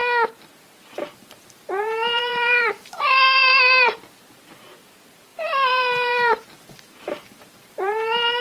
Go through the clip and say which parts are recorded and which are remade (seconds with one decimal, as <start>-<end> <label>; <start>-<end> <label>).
0.0-1.2 recorded; 1.2-3.9 remade; 3.9-5.3 recorded; 5.3-8.4 remade

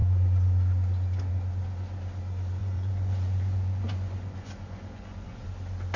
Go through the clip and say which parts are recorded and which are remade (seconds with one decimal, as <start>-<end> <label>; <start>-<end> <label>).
0.0-2.6 recorded; 2.6-5.4 remade; 5.4-6.0 recorded

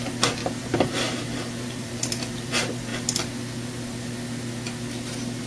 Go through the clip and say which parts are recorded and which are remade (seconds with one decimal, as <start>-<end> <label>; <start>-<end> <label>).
0.0-0.4 recorded; 0.4-2.5 remade; 2.5-5.5 recorded

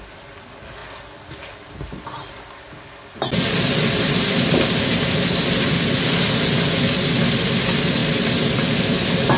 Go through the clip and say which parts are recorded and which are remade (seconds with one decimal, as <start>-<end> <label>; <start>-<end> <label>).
0.0-9.4 recorded

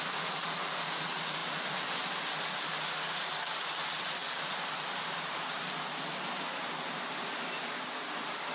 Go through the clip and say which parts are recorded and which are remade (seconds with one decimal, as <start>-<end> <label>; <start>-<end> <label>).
0.0-8.5 recorded

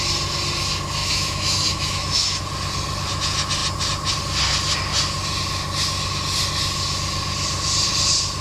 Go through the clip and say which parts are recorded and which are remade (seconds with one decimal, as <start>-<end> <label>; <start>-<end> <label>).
0.0-1.0 recorded; 1.0-2.4 remade; 2.4-8.4 recorded

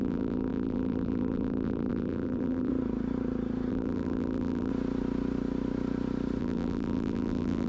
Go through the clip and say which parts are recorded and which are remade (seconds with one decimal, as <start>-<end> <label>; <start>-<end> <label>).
0.0-2.7 remade; 2.7-3.7 recorded; 3.7-4.7 remade; 4.7-6.4 recorded; 6.4-7.7 remade

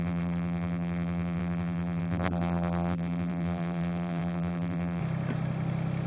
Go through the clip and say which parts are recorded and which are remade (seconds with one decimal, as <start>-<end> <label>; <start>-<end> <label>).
0.0-5.0 remade; 5.0-6.1 recorded